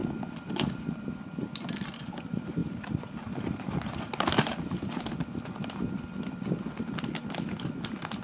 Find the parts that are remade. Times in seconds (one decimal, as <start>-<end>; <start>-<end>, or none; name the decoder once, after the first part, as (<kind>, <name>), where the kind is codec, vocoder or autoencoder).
none